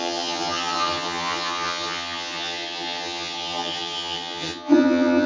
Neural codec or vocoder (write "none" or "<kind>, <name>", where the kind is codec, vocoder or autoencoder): vocoder, HiFi-GAN